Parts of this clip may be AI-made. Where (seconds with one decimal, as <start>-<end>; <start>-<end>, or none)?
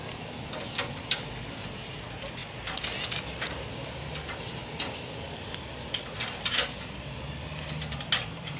none